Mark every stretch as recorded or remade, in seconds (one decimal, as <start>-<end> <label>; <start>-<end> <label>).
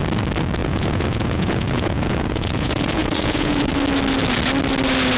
0.0-0.6 recorded; 0.6-3.7 remade; 3.7-5.2 recorded